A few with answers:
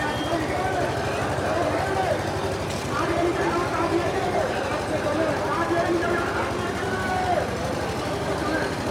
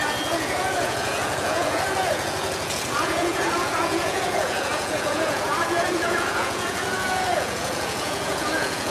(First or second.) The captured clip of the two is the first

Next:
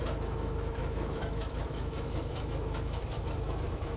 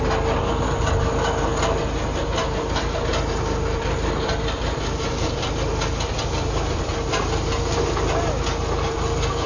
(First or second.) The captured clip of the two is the second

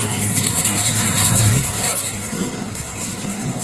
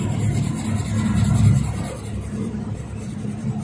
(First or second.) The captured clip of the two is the second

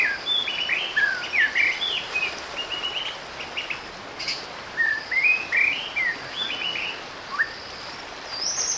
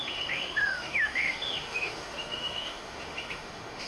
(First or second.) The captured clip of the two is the first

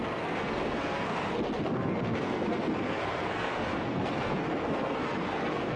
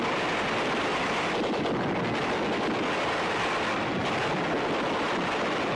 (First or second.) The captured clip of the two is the second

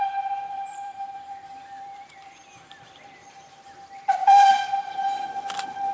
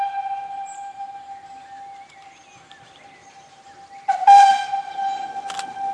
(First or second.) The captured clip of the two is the second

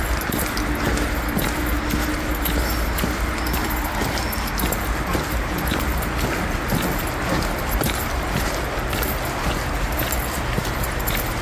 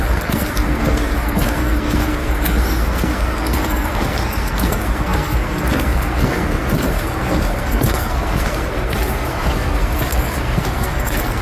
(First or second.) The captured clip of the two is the first